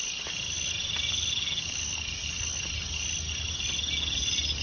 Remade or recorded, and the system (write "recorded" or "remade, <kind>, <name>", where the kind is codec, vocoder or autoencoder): recorded